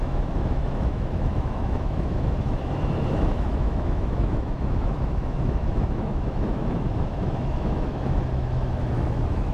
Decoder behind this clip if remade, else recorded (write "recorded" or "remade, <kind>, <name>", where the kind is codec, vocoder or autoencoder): remade, autoencoder, DAC-VAE